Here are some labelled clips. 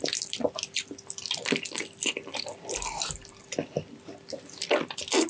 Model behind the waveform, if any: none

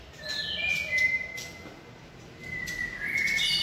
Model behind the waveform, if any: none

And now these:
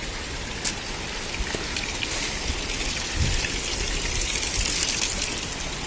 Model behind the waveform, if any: none